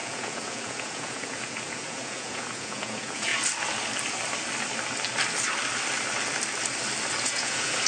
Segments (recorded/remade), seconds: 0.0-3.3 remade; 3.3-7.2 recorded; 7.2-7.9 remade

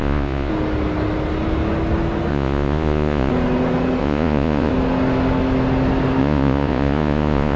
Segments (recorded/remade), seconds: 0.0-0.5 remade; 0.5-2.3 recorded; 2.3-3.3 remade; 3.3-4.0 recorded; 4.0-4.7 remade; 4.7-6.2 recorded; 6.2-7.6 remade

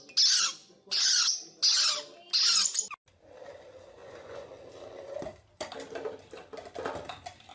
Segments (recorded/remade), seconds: 0.0-0.6 recorded; 0.6-1.3 remade; 1.3-4.0 recorded; 4.0-4.5 remade; 4.5-7.5 recorded

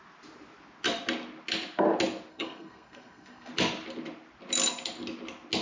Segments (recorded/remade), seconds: 0.0-2.3 recorded; 2.3-3.5 remade; 3.5-5.6 recorded

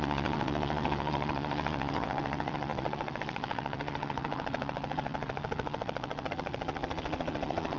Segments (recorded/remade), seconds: 0.0-7.8 remade

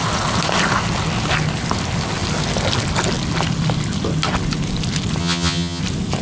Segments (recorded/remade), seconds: 0.0-5.2 recorded; 5.2-5.8 remade; 5.8-6.2 recorded